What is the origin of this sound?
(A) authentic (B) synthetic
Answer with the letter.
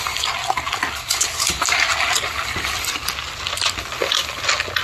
A